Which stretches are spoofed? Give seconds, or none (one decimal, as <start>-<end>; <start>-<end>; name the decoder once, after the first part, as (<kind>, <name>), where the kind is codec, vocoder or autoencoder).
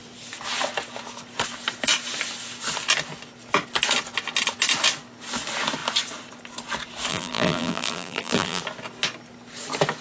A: 7.1-8.6 (vocoder, BigVGAN v2)